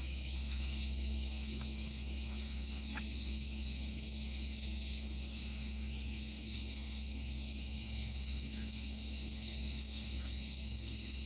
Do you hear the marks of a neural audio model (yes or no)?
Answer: yes